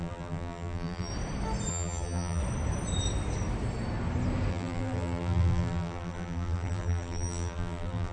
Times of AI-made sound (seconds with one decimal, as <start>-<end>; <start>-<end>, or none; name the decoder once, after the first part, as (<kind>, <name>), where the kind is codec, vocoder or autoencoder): 0.0-1.1 (vocoder, BigVGAN v2); 1.7-2.4; 4.5-8.1